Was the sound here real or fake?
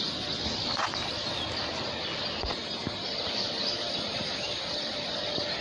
real